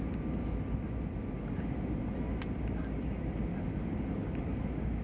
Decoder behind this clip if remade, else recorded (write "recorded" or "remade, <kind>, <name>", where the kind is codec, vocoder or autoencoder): recorded